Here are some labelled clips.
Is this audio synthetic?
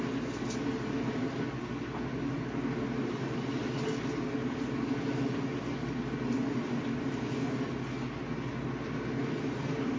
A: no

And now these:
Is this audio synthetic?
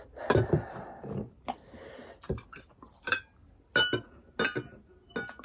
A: no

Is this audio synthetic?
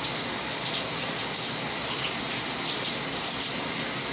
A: no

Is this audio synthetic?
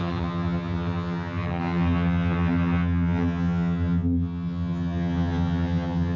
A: yes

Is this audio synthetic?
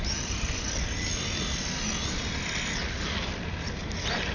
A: no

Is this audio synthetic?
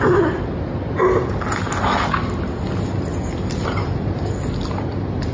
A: no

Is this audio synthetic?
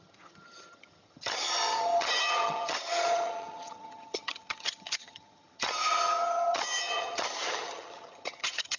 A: yes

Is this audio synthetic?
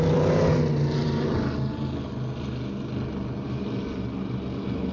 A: no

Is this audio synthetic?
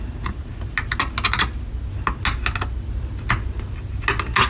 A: no